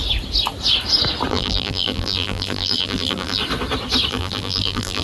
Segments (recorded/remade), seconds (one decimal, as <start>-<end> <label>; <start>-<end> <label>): 0.0-1.3 recorded; 1.3-3.4 remade; 3.4-4.1 recorded; 4.1-5.0 remade